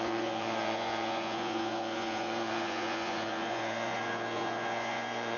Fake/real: fake